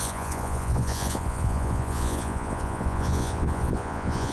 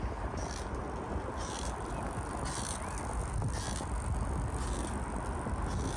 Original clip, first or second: second